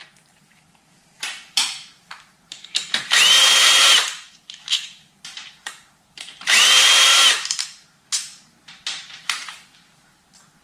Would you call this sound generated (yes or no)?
yes